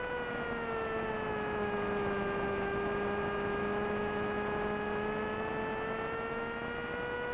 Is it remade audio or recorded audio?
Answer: recorded